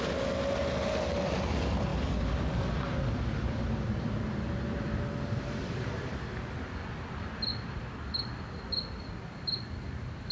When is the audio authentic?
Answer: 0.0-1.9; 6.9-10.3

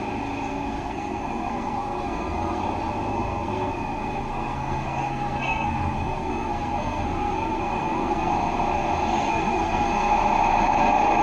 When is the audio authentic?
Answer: 0.0-0.5; 2.6-3.1; 8.3-9.1; 10.1-11.2